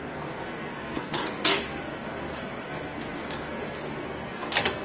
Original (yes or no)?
no